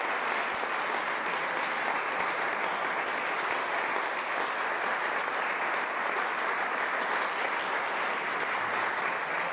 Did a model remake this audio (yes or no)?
no